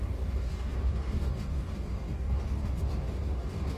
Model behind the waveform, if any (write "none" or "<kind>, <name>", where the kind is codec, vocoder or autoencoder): codec, DAC